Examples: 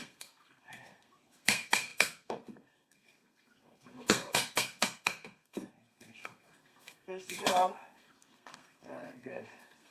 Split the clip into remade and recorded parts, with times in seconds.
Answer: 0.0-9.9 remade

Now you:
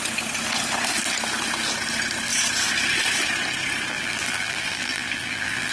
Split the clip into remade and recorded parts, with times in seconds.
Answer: 0.0-3.9 recorded; 3.9-5.7 remade